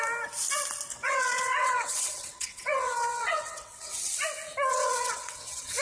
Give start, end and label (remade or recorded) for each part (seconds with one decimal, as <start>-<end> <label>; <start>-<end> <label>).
0.0-0.9 recorded; 0.9-4.0 remade; 4.0-4.7 recorded; 4.7-5.8 remade